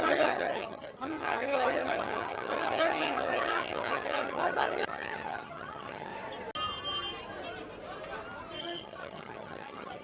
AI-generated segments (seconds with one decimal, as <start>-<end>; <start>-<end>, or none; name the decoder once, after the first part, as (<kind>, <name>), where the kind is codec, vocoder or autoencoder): 0.0-6.1 (vocoder, HiFi-GAN); 8.6-10.0